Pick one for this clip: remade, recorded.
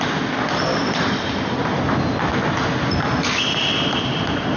recorded